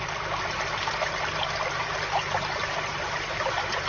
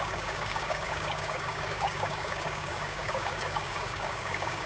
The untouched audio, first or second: first